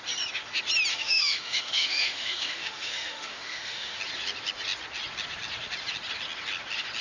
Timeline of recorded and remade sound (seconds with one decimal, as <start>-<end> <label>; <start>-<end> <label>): 0.0-0.9 recorded; 0.9-4.0 remade; 4.0-7.0 recorded